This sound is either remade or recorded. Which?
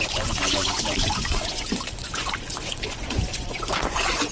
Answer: remade